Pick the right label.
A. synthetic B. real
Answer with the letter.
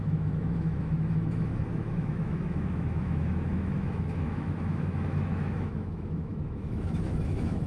A